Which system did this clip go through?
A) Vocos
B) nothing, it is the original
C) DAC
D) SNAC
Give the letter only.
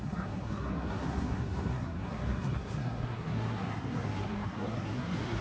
D